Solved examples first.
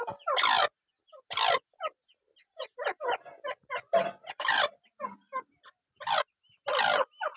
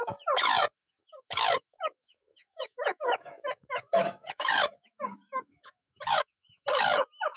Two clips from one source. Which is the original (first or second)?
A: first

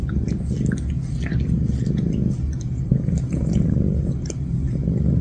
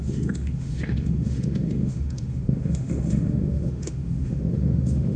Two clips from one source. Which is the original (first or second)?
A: first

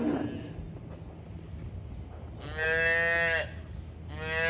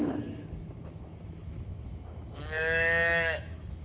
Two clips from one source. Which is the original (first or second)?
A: first